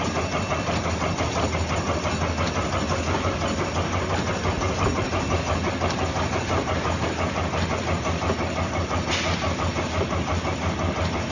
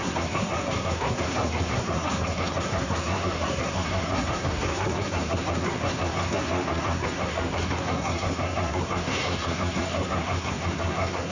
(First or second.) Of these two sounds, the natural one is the first